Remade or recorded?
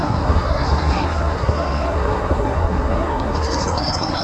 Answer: remade